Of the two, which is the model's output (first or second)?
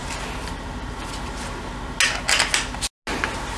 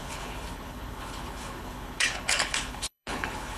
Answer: second